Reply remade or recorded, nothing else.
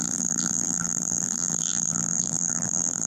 remade